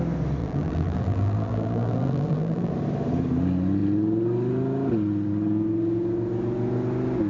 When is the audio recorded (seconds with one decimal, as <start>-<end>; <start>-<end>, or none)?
0.0-0.4; 2.7-7.3